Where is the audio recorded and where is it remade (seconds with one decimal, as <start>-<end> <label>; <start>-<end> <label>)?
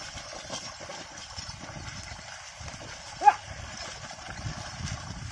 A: 0.0-5.3 recorded